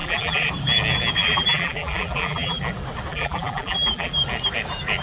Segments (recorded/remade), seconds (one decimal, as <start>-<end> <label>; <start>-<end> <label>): 0.0-0.5 remade; 0.5-1.2 recorded; 1.2-2.6 remade; 2.6-3.1 recorded; 3.1-4.1 remade; 4.1-5.0 recorded